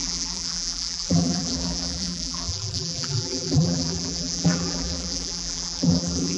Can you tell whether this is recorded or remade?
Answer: remade